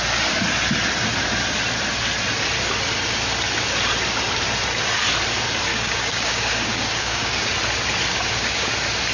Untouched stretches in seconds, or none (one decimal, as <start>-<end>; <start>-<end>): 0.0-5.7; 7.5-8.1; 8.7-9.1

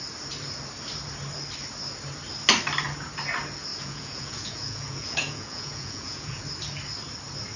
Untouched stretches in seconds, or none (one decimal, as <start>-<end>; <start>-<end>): 0.0-3.7; 6.4-7.6

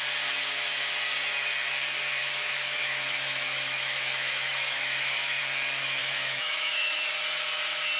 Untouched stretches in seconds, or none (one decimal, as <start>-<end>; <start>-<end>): 0.0-2.2; 5.4-6.0; 7.1-8.0